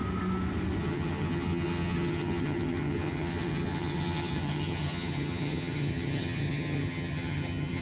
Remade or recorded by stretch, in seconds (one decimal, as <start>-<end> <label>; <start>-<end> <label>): 0.0-0.8 recorded; 0.8-7.8 remade